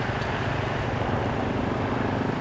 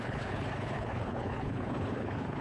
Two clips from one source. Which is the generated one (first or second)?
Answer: second